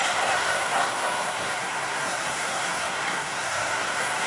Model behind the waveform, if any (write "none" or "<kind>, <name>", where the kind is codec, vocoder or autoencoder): codec, SNAC